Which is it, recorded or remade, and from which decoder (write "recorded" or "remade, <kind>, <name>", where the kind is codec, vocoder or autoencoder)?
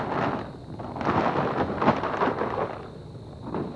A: recorded